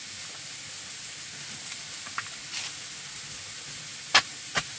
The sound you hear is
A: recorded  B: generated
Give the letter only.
A